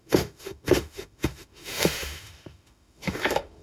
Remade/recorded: remade